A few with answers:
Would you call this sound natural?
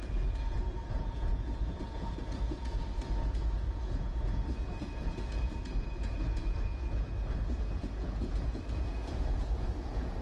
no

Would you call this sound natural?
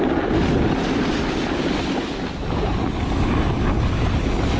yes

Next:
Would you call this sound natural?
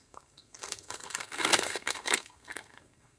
no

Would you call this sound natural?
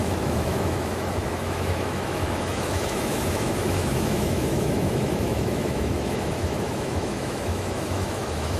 no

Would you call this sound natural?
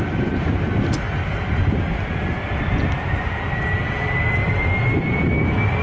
yes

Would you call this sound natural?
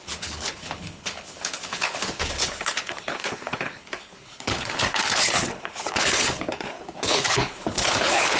no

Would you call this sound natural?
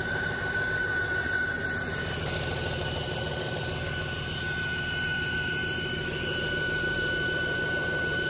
yes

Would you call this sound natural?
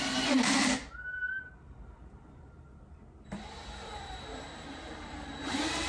no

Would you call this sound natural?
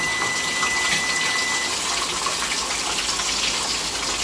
yes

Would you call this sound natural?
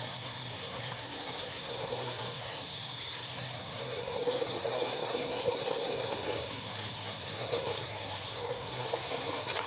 no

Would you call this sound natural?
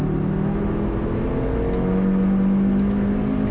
yes